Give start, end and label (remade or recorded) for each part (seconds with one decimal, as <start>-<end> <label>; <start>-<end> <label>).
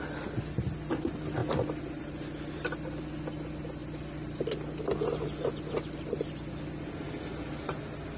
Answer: 0.0-8.2 recorded